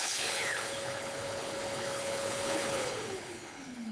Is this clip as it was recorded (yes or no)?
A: no